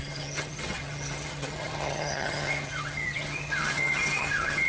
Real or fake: fake